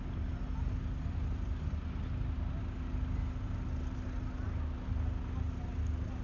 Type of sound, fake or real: real